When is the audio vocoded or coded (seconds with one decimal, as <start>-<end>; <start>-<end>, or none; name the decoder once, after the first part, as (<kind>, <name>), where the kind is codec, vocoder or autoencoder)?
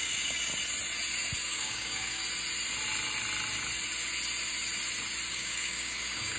0.0-0.5 (codec, DAC); 1.4-2.2; 5.3-6.4